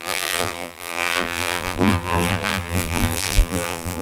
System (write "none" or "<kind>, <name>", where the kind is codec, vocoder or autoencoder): vocoder, BigVGAN v2